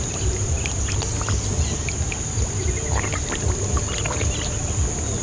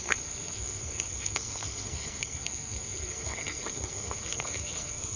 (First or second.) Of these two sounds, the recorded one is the first